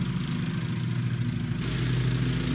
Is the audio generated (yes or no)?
no